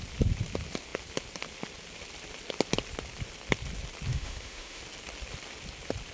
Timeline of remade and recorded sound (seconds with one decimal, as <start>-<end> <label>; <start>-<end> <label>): 0.0-4.1 recorded; 4.1-4.8 remade; 4.8-6.1 recorded